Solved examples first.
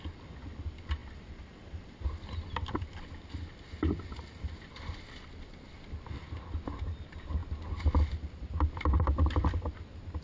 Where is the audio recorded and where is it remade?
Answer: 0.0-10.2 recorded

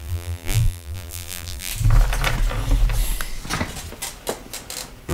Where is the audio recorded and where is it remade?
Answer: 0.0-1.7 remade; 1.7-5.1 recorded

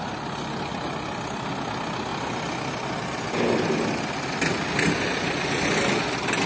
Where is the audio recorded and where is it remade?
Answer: 0.0-6.5 recorded

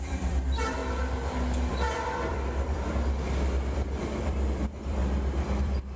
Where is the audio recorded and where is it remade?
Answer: 0.0-0.8 remade; 0.8-1.7 recorded; 1.7-6.0 remade

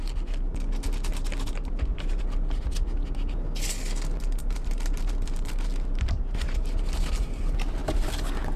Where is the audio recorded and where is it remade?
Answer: 0.0-1.1 recorded; 1.1-2.2 remade; 2.2-4.4 recorded; 4.4-6.7 remade; 6.7-7.8 recorded; 7.8-8.6 remade

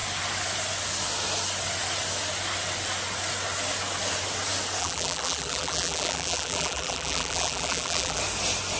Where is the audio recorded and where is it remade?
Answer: 0.0-4.8 recorded; 4.8-8.2 remade; 8.2-8.8 recorded

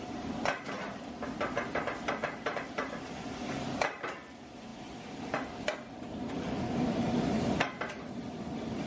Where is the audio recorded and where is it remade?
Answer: 0.0-8.9 remade

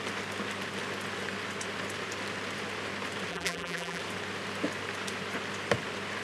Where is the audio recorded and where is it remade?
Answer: 0.0-3.3 recorded; 3.3-4.0 remade; 4.0-6.2 recorded